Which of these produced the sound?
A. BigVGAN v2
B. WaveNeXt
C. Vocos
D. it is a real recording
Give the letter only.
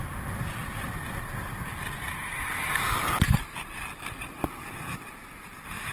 D